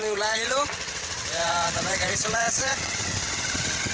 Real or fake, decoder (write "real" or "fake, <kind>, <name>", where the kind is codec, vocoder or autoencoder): fake, vocoder, WaveNeXt